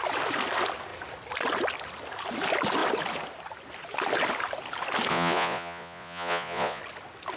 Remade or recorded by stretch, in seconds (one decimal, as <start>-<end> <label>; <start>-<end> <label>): 0.0-5.1 recorded; 5.1-6.8 remade; 6.8-7.4 recorded